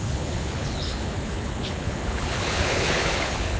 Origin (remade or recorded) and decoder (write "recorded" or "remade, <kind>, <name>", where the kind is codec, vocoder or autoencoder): remade, codec, HILCodec